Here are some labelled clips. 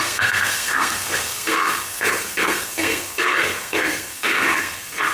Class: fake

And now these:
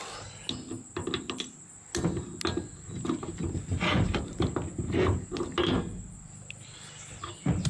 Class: real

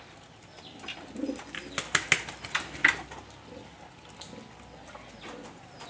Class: real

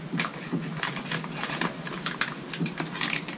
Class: real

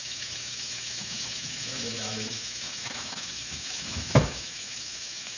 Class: fake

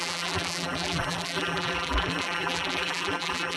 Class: fake